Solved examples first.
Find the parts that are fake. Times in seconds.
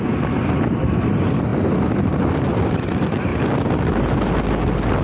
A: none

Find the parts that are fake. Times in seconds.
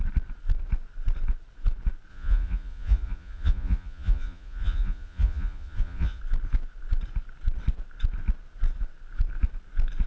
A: 2.1-6.2 (vocoder, Vocos)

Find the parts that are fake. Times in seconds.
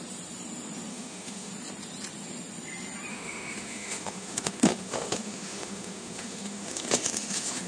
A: 0.9-1.5 (autoencoder, DAC-VAE); 3.1-7.7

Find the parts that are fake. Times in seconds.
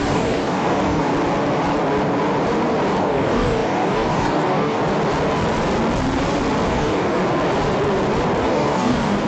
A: 0.0-1.1 (codec, DAC); 3.0-4.8; 6.7-7.2; 8.4-9.3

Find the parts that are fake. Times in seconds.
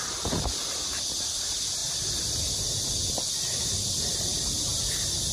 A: none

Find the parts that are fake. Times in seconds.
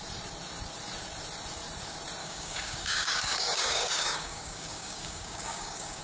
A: 2.2-6.0 (codec, DAC)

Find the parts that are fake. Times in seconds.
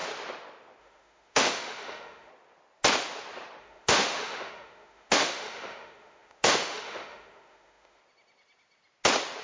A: 0.8-2.3 (autoencoder, DAC-VAE); 3.6-8.0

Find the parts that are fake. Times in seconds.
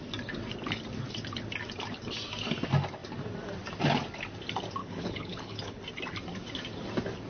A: 4.8-5.8 (codec, HILCodec)